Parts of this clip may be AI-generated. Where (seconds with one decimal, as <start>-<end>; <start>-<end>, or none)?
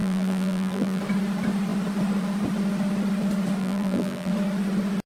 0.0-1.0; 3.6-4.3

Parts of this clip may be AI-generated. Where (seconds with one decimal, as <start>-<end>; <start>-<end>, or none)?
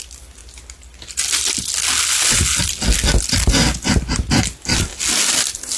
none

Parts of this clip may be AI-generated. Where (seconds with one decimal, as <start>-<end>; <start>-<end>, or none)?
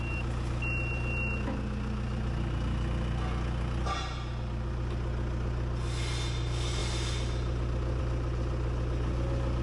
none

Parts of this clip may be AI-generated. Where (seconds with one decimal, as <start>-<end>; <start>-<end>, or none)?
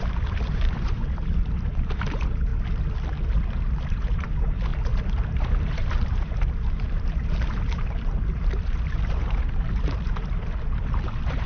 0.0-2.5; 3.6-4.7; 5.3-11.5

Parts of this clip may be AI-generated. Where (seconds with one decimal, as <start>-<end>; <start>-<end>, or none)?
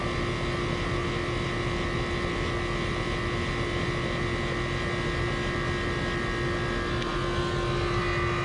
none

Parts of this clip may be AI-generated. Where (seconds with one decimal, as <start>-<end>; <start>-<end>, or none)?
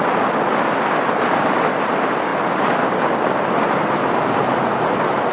none